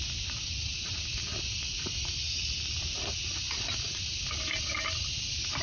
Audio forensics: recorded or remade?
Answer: recorded